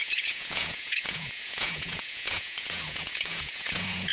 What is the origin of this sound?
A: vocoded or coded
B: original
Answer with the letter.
A